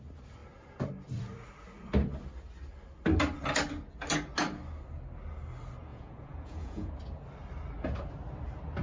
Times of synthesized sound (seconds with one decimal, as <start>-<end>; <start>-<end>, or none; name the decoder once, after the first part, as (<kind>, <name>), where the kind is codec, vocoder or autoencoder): 5.9-6.9 (vocoder, Vocos)